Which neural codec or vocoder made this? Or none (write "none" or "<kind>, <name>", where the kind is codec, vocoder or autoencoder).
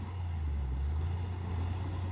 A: none